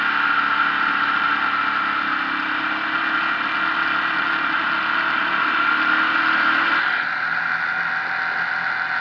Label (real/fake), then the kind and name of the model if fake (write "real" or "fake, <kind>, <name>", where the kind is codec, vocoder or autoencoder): real